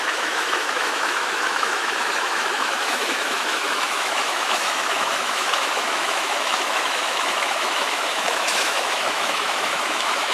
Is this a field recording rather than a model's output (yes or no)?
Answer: no